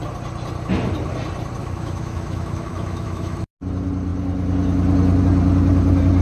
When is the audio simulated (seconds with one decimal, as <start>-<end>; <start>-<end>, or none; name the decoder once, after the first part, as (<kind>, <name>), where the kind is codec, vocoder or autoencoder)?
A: 1.6-3.5 (autoencoder, DAC-VAE)